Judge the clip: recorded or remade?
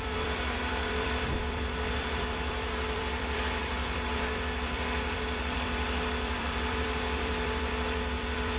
remade